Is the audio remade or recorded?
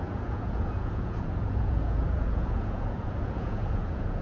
remade